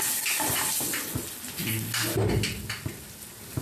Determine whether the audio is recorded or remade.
recorded